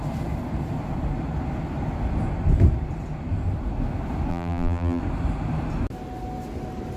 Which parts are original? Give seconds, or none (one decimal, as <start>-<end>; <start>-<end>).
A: 0.0-4.3; 5.0-7.0